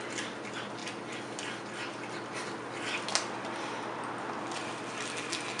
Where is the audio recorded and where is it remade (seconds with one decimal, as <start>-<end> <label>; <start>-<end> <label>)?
0.0-5.6 recorded